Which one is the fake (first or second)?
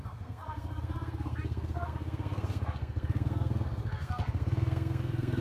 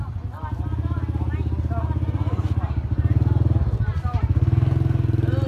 first